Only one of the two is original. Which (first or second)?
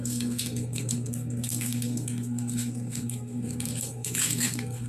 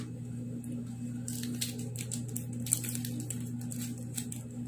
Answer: second